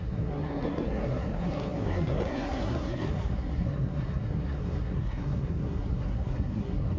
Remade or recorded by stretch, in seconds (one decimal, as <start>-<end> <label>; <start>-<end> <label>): 0.0-7.0 remade